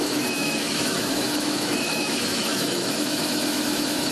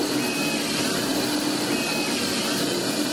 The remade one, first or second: first